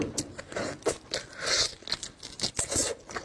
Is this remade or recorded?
recorded